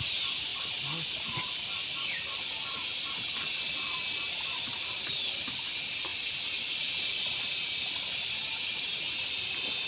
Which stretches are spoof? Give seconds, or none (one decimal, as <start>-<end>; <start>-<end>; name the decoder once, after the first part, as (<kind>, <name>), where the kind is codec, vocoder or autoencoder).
none